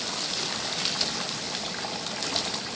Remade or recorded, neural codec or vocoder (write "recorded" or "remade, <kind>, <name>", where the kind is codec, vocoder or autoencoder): recorded